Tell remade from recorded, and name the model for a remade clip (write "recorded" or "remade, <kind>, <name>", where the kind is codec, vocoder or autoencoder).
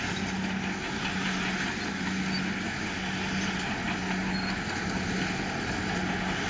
recorded